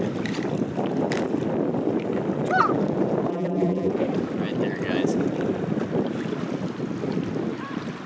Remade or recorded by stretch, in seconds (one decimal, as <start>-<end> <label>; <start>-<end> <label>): 0.0-3.3 recorded; 3.3-3.9 remade; 3.9-8.1 recorded